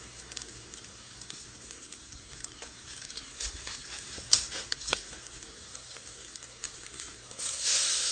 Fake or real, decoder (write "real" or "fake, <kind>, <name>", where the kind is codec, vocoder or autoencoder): fake, codec, SNAC